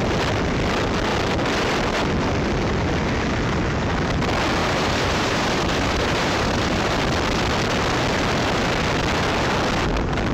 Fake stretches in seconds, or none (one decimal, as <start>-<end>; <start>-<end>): 4.6-7.0